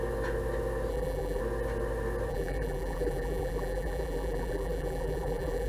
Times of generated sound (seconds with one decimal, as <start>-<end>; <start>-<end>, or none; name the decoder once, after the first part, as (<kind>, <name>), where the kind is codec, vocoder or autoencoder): 0.9-1.4 (vocoder, BigVGAN v2); 2.3-5.7